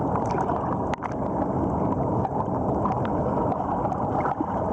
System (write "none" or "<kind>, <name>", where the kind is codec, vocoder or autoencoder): none